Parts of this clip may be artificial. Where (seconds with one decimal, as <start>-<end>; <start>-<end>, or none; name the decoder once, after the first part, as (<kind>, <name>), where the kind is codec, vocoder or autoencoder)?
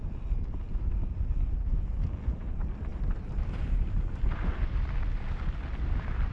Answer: none